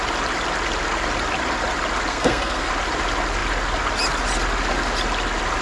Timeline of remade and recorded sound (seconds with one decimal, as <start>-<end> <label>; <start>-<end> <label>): 0.0-2.1 recorded; 2.1-2.7 remade; 2.7-5.6 recorded